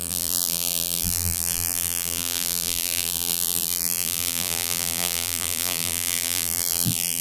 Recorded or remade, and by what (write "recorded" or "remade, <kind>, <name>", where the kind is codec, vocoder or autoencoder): remade, vocoder, BigVGAN v2